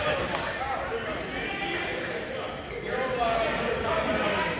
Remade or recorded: recorded